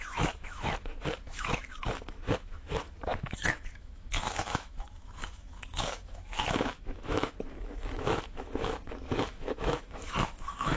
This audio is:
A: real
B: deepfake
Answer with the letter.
B